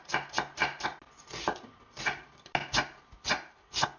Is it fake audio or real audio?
real